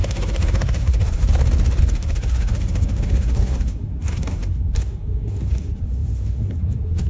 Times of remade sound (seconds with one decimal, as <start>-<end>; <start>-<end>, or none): 0.0-1.2; 1.8-7.1